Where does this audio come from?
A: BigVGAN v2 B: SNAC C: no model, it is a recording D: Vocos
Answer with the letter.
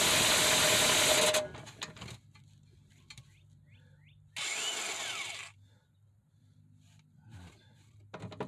C